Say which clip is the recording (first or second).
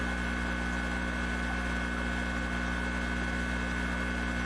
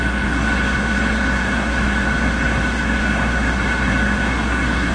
first